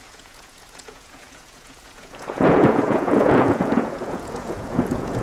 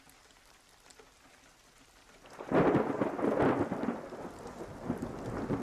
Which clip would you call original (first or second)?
second